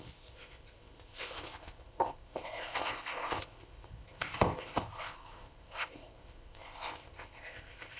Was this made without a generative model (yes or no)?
no